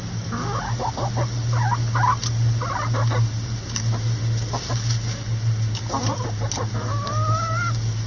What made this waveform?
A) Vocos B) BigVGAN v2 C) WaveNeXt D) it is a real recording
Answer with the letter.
D